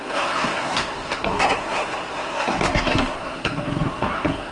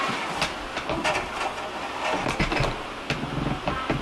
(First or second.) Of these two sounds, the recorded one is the second